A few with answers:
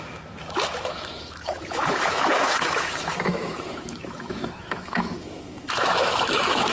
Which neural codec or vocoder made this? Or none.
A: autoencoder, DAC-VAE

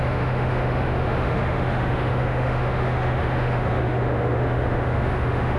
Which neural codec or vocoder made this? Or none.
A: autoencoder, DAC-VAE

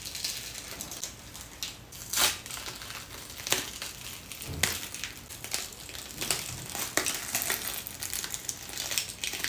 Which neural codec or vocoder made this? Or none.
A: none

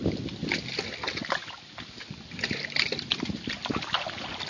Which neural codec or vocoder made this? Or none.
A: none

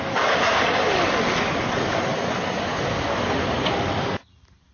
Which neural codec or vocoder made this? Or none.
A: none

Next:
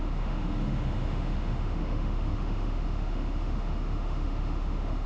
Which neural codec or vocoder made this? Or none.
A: autoencoder, DAC-VAE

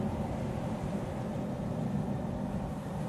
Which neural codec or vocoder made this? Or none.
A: none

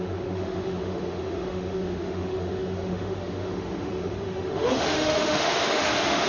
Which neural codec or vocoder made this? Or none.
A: autoencoder, DAC-VAE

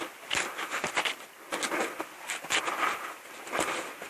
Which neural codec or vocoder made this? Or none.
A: none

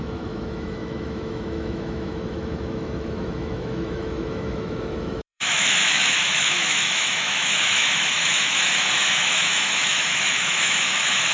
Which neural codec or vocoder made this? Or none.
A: autoencoder, DAC-VAE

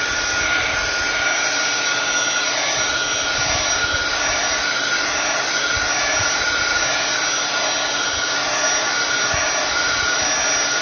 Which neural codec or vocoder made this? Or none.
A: none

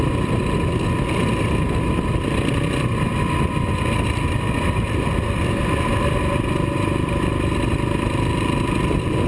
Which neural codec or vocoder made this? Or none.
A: none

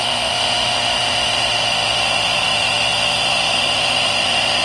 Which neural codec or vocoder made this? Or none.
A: autoencoder, DAC-VAE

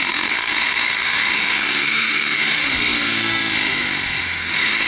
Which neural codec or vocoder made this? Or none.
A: autoencoder, DAC-VAE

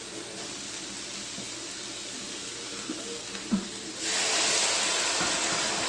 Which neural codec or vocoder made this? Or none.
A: none